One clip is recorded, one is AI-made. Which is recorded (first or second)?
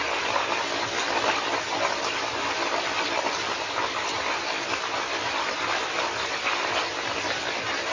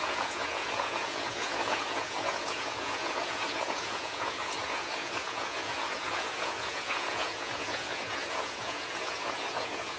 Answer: first